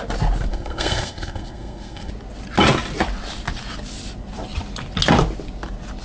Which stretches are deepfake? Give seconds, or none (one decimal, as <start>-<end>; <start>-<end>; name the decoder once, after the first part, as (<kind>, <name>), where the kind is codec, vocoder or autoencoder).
0.5-2.1 (codec, SNAC)